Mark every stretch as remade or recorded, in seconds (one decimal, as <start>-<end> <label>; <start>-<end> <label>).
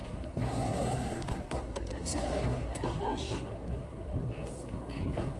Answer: 0.0-5.4 remade